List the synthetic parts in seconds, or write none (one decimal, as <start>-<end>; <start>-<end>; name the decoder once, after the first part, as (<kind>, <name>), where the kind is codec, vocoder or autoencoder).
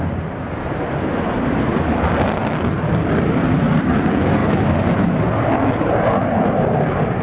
none